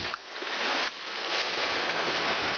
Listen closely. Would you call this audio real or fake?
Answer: fake